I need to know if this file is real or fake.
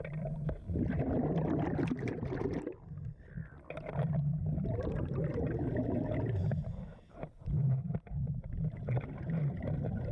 real